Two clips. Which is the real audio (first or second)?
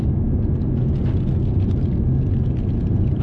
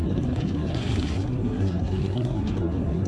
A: first